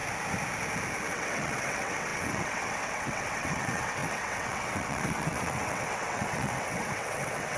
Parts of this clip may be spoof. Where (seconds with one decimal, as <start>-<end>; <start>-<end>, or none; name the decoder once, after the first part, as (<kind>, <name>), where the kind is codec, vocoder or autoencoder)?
1.1-7.6 (vocoder, WaveNeXt)